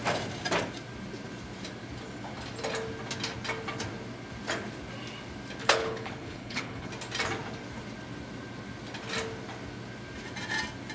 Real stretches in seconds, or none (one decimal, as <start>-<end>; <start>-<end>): 0.0-5.6; 6.9-10.9